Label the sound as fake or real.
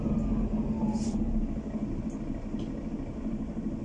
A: real